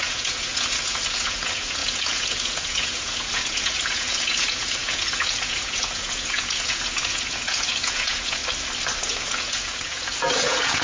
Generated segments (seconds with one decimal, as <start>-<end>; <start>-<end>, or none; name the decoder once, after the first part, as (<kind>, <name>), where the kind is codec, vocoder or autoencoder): 0.0-8.4 (vocoder, Vocos); 9.0-10.8